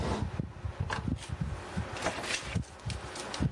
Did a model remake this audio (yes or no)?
no